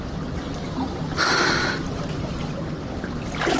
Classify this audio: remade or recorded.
recorded